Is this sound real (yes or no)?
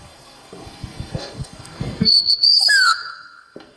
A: no